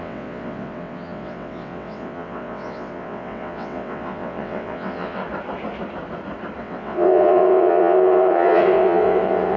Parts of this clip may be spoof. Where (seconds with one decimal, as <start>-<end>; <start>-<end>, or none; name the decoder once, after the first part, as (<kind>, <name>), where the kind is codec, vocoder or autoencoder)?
0.0-5.2 (vocoder, WaveNeXt); 6.6-9.6